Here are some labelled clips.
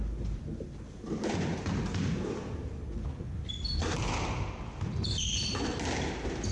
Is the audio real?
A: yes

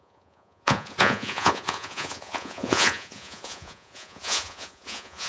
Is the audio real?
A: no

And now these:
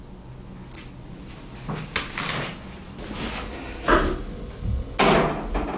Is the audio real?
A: yes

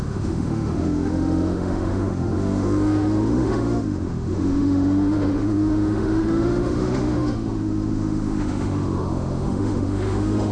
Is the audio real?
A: no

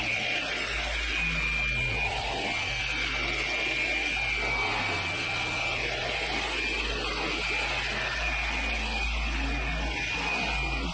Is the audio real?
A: yes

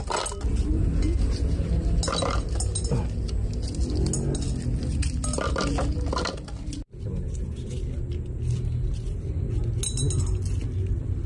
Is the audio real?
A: yes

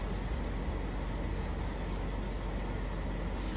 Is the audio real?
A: yes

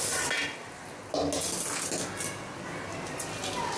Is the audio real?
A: yes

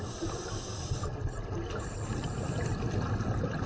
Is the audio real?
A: yes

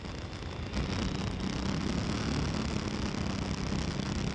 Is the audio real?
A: yes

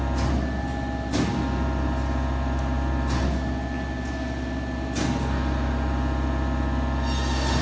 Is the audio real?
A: yes